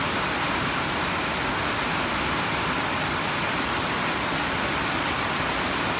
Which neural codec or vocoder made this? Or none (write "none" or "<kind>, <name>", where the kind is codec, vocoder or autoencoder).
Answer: none